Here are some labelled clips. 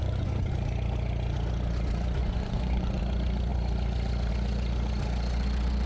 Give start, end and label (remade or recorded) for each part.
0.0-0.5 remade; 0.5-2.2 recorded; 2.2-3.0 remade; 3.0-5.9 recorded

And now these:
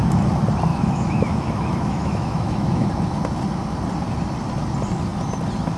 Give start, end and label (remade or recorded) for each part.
0.0-0.7 recorded; 0.7-2.9 remade; 2.9-5.8 recorded

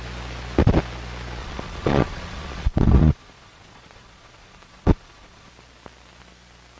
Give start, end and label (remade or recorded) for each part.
0.0-1.4 recorded; 1.4-5.5 remade; 5.5-6.8 recorded

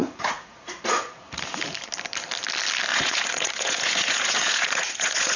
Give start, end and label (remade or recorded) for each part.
0.0-1.4 remade; 1.4-2.9 recorded; 2.9-5.4 remade

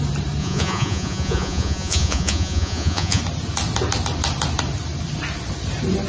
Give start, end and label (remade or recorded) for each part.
0.0-0.4 recorded; 0.4-3.2 remade; 3.2-6.1 recorded

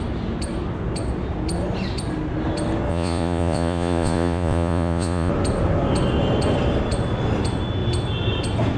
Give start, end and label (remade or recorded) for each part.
0.0-2.9 recorded; 2.9-5.3 remade; 5.3-8.8 recorded

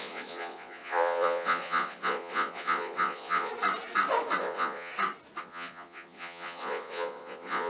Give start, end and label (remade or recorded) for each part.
0.0-3.5 remade; 3.5-4.4 recorded; 4.4-4.9 remade; 4.9-5.4 recorded; 5.4-7.7 remade

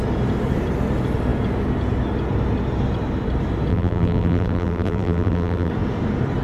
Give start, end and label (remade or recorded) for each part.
0.0-3.7 recorded; 3.7-5.7 remade; 5.7-6.4 recorded